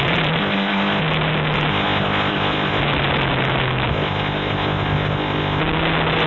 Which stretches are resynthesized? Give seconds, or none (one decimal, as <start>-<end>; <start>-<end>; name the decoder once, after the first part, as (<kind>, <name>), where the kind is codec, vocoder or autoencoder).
0.4-1.0 (codec, ZipCodec); 1.7-2.8; 3.9-5.6